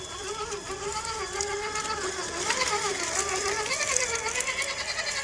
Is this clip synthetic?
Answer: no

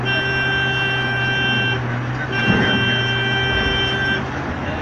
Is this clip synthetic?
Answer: no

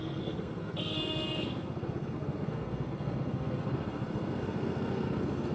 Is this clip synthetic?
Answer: yes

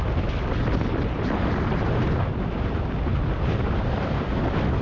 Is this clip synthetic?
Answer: no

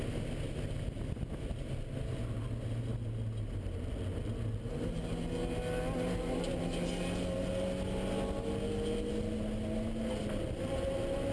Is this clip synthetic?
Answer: no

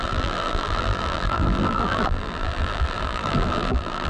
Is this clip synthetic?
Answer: yes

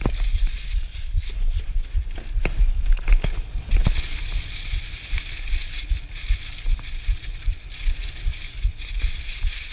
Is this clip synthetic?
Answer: no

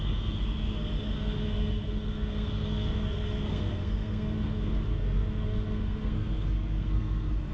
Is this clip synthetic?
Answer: yes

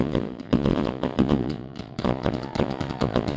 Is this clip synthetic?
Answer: yes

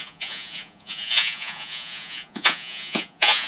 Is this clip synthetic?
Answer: yes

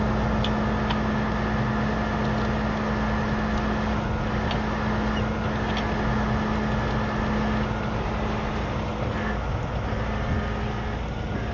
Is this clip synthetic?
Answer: no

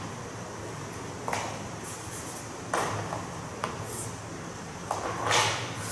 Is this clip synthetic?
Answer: no